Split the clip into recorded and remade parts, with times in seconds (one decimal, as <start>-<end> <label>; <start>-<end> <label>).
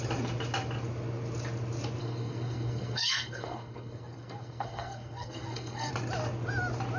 0.0-2.0 recorded; 2.0-5.9 remade; 5.9-7.0 recorded